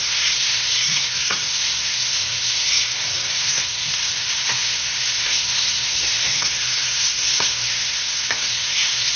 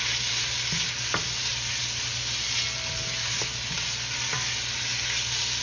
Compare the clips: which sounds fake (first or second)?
first